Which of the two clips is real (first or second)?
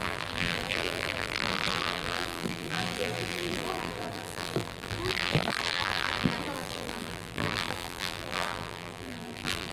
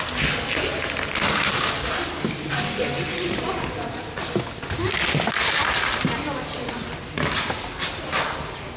second